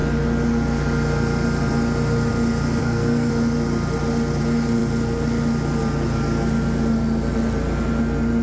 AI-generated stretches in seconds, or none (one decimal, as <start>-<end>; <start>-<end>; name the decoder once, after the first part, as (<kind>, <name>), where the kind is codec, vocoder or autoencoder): 2.8-3.3 (codec, SNAC)